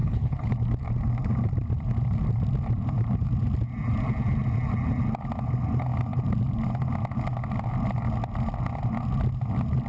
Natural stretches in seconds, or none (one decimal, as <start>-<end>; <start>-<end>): 0.5-9.9